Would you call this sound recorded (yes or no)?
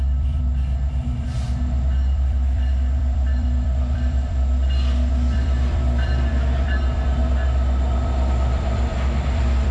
no